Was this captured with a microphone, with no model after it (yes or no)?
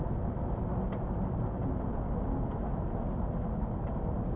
yes